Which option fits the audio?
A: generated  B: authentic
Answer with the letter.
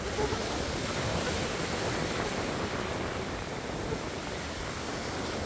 B